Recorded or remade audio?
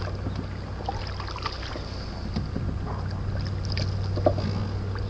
recorded